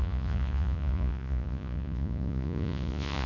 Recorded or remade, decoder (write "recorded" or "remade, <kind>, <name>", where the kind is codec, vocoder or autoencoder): remade, vocoder, Vocos